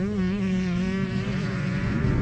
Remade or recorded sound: remade